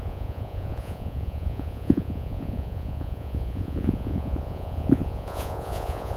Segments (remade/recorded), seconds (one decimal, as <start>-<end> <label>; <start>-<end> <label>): 0.0-6.2 remade